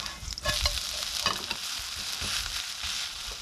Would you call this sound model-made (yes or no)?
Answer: no